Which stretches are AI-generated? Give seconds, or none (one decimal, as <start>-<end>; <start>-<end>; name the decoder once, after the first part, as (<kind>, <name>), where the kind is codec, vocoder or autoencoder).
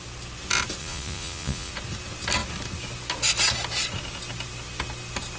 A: 0.8-1.7 (vocoder, Vocos)